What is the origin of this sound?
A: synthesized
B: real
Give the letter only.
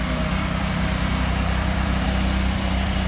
A